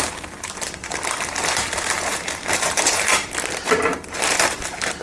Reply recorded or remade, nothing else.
remade